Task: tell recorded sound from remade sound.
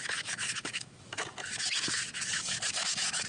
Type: remade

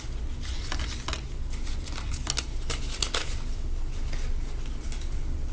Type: recorded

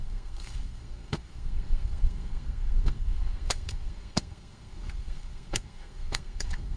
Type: remade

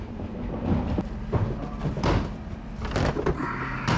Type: recorded